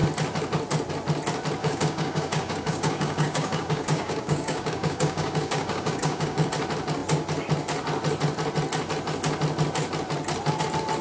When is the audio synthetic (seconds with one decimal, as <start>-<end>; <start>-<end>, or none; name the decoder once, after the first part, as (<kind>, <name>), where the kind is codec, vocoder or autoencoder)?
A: 1.6-6.5 (codec, DAC)